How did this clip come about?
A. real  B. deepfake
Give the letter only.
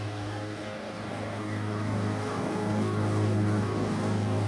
B